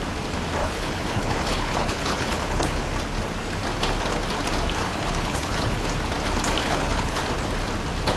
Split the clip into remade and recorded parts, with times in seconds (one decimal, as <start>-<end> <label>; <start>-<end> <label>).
0.0-0.6 recorded; 0.6-2.8 remade; 2.8-4.8 recorded; 4.8-5.9 remade; 5.9-6.6 recorded; 6.6-7.2 remade; 7.2-8.2 recorded